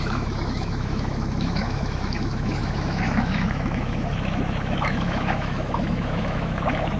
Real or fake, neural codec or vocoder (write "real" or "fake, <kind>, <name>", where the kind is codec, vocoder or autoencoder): fake, autoencoder, DAC-VAE